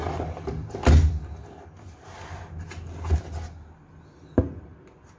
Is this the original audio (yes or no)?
yes